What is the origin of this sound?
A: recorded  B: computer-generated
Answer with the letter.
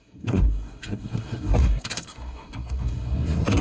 B